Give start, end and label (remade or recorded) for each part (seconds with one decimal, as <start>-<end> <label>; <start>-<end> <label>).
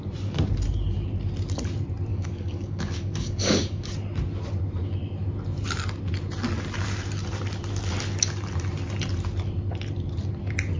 0.0-2.1 recorded; 2.1-3.9 remade; 3.9-10.8 recorded